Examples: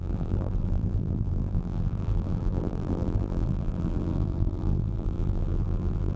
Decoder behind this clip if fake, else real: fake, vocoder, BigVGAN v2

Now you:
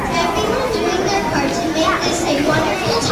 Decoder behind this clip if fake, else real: real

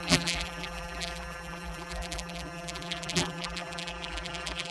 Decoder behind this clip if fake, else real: fake, vocoder, BigVGAN v2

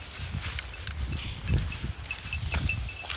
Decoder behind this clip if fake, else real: fake, vocoder, BigVGAN v2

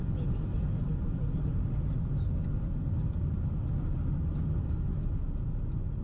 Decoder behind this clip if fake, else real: real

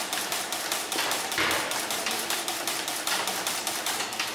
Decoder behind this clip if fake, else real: fake, vocoder, BigVGAN v2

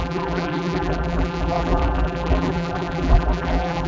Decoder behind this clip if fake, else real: fake, vocoder, BigVGAN v2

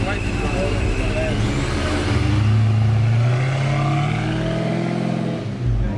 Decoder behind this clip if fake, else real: real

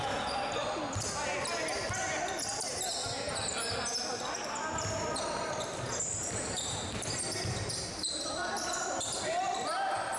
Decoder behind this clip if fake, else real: real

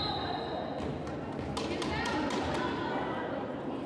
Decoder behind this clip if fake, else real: real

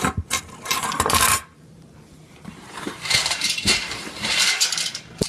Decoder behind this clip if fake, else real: fake, vocoder, BigVGAN v2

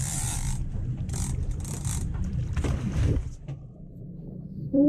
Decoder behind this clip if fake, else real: fake, vocoder, BigVGAN v2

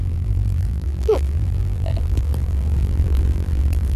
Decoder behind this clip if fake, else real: fake, vocoder, BigVGAN v2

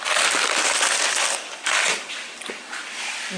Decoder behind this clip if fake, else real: fake, vocoder, BigVGAN v2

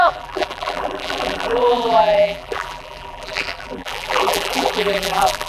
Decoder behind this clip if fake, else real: fake, vocoder, BigVGAN v2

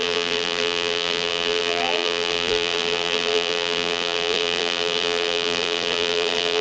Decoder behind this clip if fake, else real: fake, vocoder, BigVGAN v2